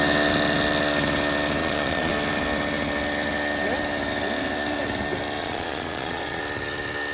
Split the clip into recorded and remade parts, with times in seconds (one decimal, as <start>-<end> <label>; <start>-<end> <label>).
0.0-1.6 recorded; 1.6-2.1 remade; 2.1-5.4 recorded; 5.4-6.4 remade; 6.4-7.1 recorded